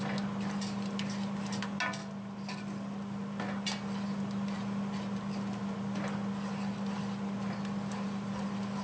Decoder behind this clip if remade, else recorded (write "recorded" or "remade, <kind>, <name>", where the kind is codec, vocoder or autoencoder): recorded